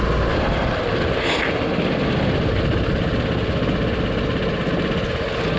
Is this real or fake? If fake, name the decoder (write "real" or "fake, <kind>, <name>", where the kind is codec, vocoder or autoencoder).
real